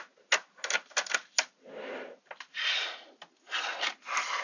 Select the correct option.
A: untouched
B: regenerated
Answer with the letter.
A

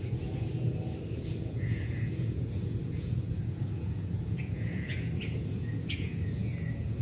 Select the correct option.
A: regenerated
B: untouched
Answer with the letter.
A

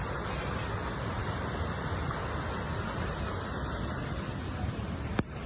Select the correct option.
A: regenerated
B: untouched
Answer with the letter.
B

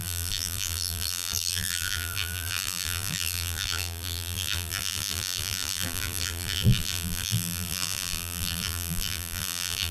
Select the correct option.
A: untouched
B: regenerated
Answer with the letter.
B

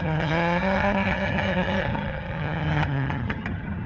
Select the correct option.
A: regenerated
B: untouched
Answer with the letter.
A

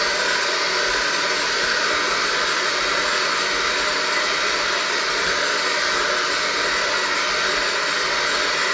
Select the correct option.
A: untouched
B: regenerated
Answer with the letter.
A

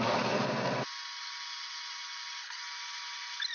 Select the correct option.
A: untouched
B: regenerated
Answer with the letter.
A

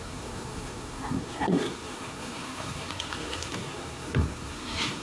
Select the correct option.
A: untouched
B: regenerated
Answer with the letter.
B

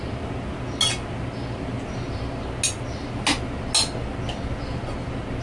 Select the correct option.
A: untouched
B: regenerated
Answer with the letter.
A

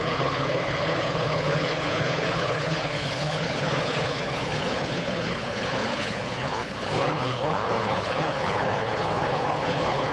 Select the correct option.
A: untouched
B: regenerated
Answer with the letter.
B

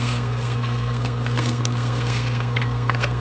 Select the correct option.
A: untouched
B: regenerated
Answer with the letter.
B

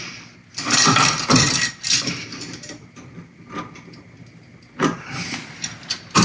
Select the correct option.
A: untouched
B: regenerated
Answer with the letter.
A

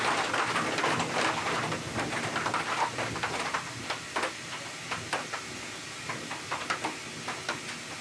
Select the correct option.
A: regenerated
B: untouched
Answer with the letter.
B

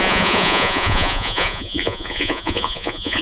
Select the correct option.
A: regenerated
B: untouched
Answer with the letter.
A